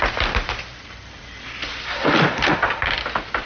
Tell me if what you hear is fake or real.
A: real